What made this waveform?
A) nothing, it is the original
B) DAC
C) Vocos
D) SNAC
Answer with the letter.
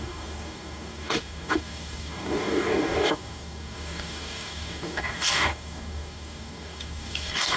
B